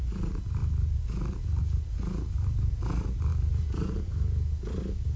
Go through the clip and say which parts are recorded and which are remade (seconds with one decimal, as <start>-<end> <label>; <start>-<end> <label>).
0.0-5.2 recorded